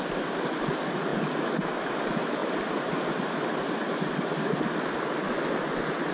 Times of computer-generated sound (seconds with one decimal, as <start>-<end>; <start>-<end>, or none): none